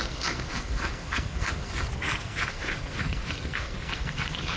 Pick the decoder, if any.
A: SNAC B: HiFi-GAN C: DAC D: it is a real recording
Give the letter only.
A